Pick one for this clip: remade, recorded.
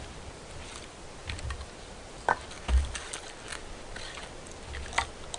recorded